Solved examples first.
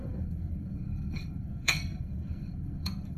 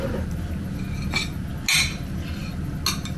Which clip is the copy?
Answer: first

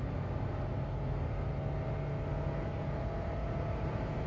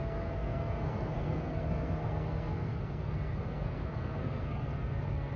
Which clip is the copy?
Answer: second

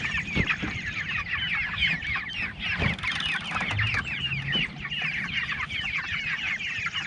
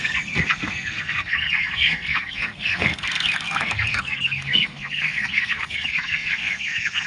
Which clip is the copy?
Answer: second